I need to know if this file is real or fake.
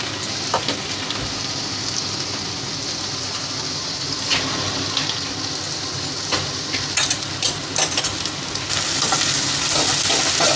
real